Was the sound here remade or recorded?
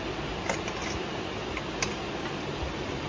recorded